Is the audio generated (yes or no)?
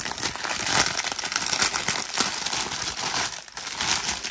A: no